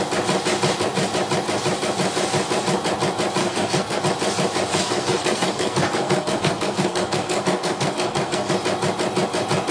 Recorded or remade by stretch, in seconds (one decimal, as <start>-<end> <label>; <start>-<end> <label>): 0.0-3.4 recorded; 3.4-4.0 remade; 4.0-4.7 recorded; 4.7-8.5 remade; 8.5-9.7 recorded